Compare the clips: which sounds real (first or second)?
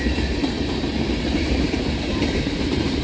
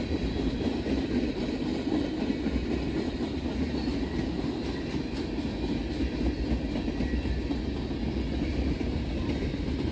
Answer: second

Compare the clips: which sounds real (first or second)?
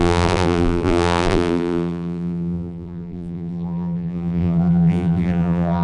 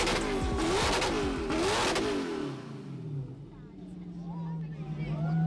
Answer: second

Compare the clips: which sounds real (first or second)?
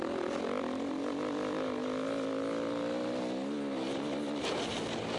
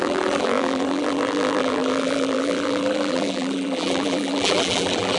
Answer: first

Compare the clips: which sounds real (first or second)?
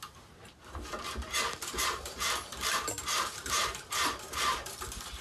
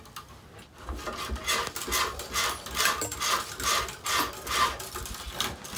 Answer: second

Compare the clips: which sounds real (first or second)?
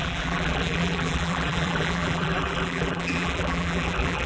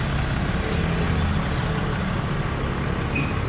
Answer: second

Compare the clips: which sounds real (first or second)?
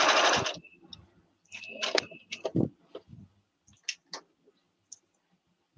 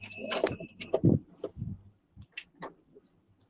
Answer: first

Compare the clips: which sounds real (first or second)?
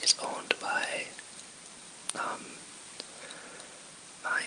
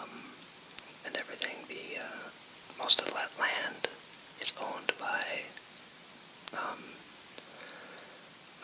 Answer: second